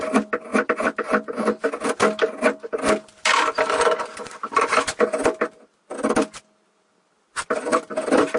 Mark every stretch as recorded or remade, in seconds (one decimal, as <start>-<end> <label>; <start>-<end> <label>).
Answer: 0.0-0.5 recorded; 0.5-1.6 remade; 1.6-7.7 recorded; 7.7-8.4 remade